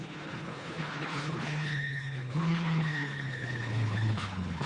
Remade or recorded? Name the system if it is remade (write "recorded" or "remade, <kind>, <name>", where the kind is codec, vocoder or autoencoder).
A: remade, codec, HILCodec